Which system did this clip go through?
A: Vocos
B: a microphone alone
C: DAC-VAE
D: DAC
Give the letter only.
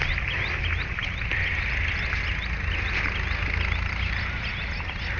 B